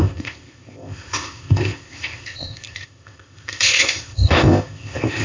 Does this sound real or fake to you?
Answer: fake